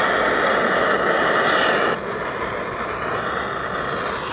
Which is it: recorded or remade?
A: recorded